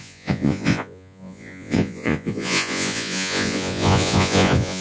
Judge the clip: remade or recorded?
remade